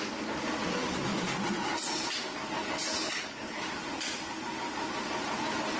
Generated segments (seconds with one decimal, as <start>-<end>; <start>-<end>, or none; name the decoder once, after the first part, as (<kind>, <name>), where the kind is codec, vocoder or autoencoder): 3.0-3.6 (codec, HILCodec)